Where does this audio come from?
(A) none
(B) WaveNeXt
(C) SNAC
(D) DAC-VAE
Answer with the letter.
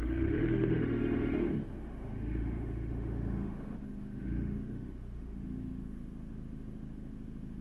D